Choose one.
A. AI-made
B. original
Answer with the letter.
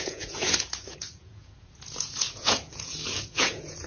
A